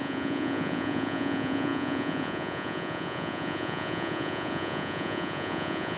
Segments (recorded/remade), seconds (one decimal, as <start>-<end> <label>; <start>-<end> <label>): 0.0-6.0 remade